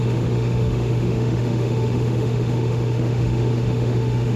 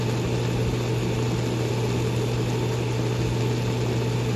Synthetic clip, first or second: first